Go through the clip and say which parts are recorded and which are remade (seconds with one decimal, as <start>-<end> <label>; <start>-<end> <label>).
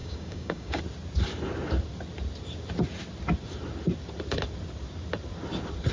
0.0-0.8 remade; 0.8-5.9 recorded